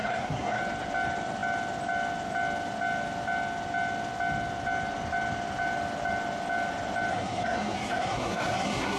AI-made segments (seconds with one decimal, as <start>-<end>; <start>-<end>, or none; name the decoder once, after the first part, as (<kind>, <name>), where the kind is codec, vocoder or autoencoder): 0.0-0.6 (codec, SNAC); 7.1-9.0